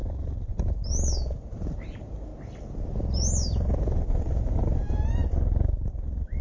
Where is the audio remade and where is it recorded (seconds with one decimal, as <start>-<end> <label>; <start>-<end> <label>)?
0.0-2.3 remade; 2.3-3.8 recorded; 3.8-5.2 remade; 5.2-5.9 recorded; 5.9-6.4 remade